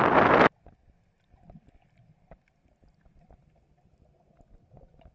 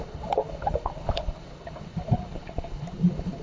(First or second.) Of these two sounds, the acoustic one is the first